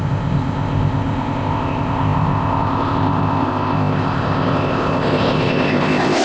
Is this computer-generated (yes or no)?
yes